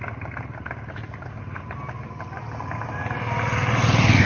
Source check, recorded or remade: recorded